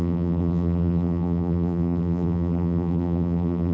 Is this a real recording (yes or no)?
no